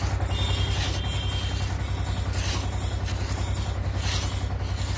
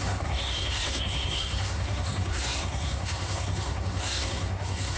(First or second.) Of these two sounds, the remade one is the second